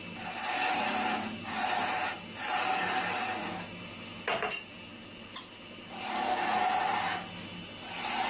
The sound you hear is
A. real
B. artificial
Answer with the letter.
A